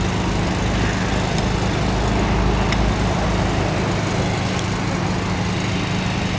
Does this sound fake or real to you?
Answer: real